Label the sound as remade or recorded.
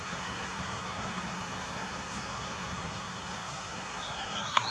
remade